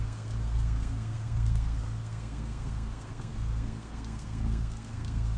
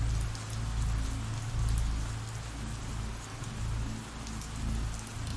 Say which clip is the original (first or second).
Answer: second